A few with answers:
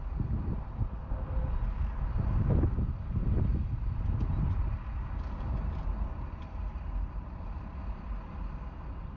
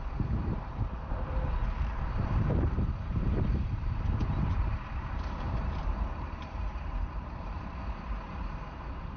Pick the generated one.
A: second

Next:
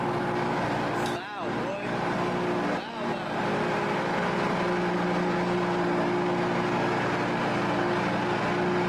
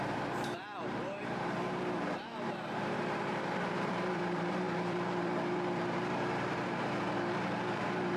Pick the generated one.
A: second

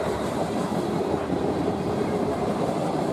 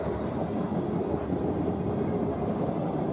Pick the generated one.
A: first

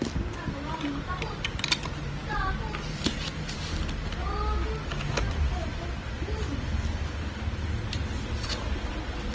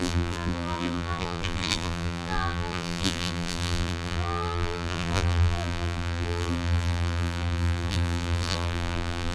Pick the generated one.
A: second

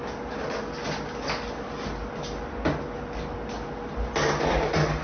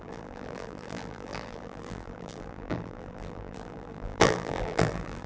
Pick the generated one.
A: second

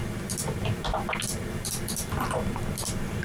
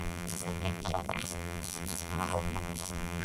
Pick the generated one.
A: second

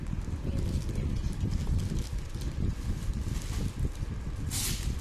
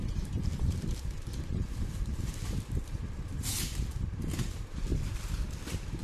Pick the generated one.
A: second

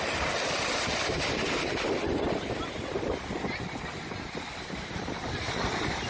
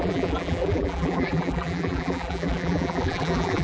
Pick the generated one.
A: second